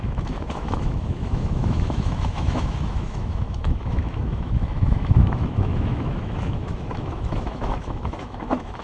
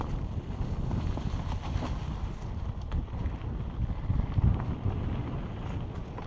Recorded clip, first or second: second